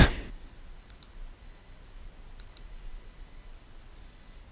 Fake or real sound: real